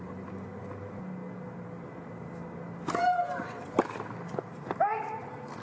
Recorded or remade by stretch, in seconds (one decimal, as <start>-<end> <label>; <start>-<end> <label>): 0.0-5.6 recorded